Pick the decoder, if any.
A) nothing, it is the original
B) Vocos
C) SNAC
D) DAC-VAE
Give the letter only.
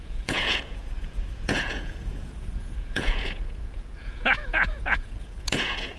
B